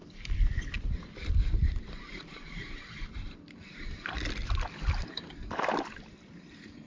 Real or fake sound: fake